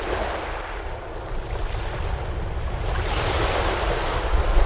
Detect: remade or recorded recorded